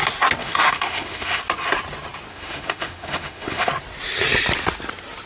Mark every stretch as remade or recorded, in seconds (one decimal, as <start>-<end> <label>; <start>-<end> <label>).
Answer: 0.0-0.4 recorded; 0.4-1.4 remade; 1.4-2.3 recorded; 2.3-3.7 remade; 3.7-5.3 recorded